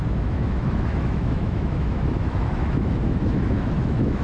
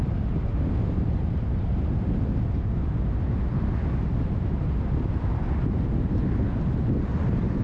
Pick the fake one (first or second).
first